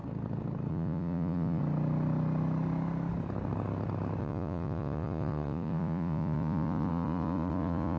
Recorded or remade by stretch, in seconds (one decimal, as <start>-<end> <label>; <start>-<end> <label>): 0.0-0.7 recorded; 0.7-1.6 remade; 1.6-4.2 recorded; 4.2-8.0 remade